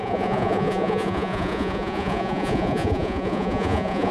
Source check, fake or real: fake